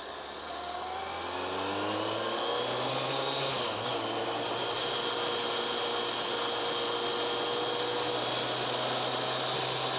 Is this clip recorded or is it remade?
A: recorded